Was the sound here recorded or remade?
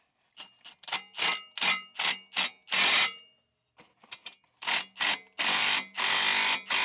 recorded